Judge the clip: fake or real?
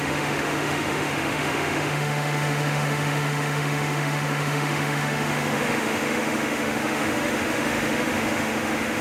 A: fake